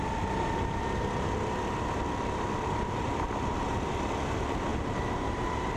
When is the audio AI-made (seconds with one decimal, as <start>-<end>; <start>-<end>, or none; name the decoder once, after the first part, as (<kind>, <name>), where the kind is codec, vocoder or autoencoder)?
4.7-5.8 (vocoder, BigVGAN v2)